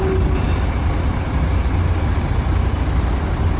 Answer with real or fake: real